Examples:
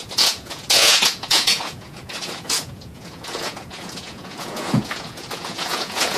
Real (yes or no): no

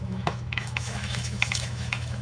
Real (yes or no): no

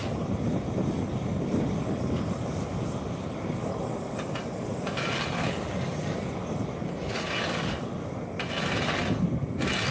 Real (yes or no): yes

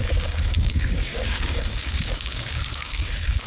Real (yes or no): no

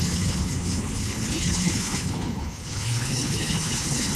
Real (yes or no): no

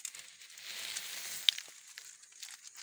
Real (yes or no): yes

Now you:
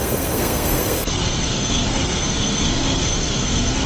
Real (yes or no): no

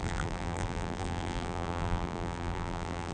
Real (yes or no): no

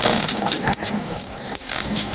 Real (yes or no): no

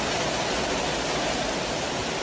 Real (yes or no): yes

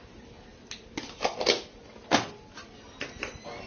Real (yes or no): yes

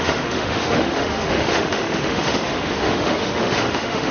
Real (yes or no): no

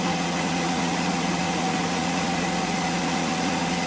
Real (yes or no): no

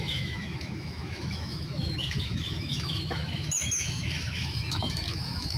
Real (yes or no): no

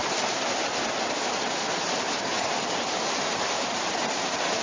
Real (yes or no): yes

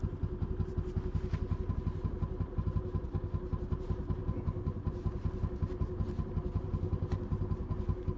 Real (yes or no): yes